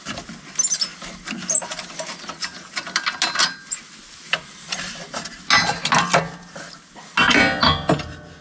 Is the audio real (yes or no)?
yes